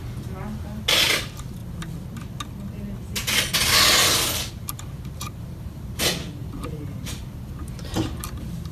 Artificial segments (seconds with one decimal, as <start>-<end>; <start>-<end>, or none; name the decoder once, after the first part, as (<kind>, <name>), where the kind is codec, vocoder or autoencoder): 0.9-1.6 (vocoder, BigVGAN v2); 4.5-8.7